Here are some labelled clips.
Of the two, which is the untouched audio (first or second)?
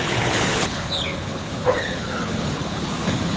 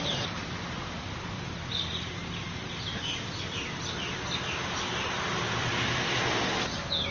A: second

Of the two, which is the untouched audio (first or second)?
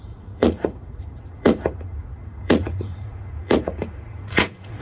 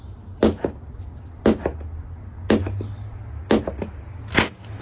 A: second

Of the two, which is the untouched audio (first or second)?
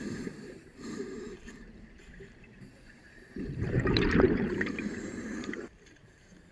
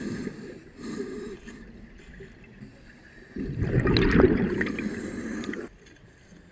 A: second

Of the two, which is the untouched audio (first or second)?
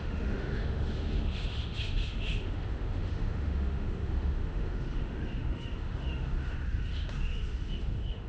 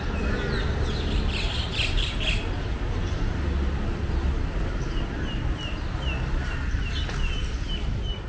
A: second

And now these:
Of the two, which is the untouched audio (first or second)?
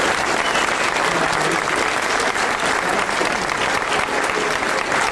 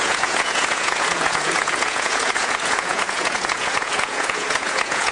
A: first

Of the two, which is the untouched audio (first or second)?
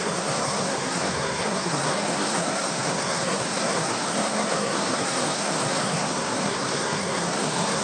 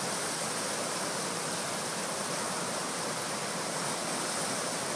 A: second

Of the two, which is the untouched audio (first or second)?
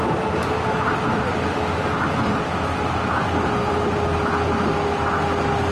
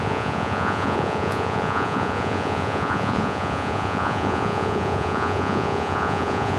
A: first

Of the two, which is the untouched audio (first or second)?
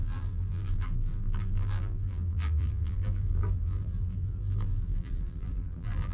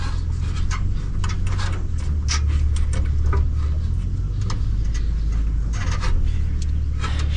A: second